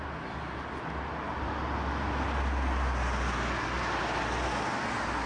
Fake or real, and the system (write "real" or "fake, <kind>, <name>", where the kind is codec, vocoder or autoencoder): real